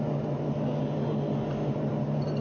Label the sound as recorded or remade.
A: recorded